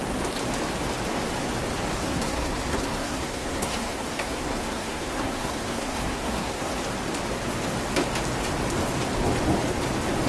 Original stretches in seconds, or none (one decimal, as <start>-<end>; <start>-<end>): 0.0-2.0; 6.7-10.3